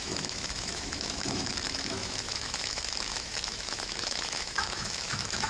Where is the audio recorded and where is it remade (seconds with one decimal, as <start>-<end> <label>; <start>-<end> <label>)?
0.0-5.5 remade

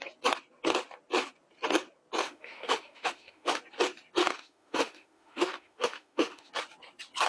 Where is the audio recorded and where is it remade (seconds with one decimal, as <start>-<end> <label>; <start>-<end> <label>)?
0.0-2.2 recorded; 2.2-3.6 remade; 3.6-4.2 recorded; 4.2-6.5 remade; 6.5-7.3 recorded

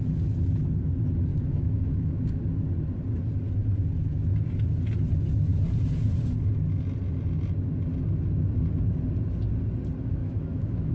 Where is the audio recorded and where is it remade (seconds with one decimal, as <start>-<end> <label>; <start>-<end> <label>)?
0.0-1.3 recorded; 1.3-2.4 remade; 2.4-10.2 recorded; 10.2-10.9 remade

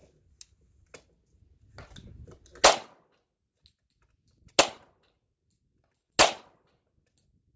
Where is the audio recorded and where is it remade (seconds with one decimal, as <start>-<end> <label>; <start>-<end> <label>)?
0.0-7.6 recorded

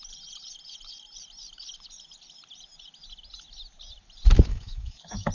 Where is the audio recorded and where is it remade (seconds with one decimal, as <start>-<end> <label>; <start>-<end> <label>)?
0.0-4.5 recorded; 4.5-5.3 remade

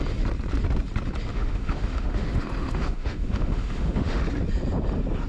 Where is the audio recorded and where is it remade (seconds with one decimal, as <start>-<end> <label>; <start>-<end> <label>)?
0.0-1.3 recorded; 1.3-4.2 remade; 4.2-5.3 recorded